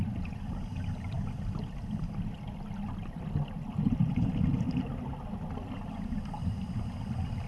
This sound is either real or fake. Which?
real